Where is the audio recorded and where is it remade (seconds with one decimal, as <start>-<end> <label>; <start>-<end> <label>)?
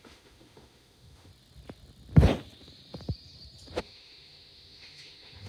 0.0-1.3 remade; 1.3-3.8 recorded; 3.8-5.5 remade